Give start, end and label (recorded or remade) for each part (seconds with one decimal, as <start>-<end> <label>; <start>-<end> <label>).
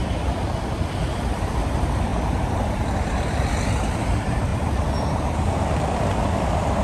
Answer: 0.0-6.8 remade